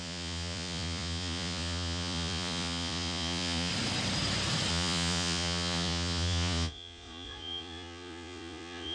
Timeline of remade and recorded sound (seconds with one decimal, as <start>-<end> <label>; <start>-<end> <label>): 0.0-3.7 remade; 3.7-4.7 recorded; 4.7-8.9 remade